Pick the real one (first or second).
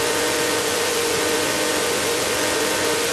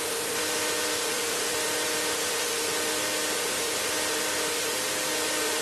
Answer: second